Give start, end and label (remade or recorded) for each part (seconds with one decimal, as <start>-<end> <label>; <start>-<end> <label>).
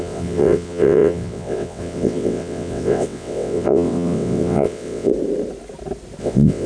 0.0-5.1 remade; 5.1-6.2 recorded; 6.2-6.7 remade